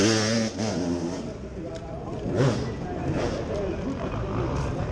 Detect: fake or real real